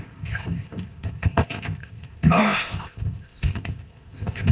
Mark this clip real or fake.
fake